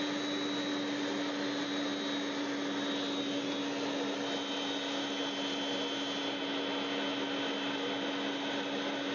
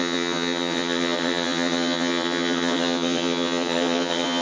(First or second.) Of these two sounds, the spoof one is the second